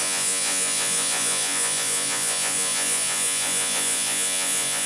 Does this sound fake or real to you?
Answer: fake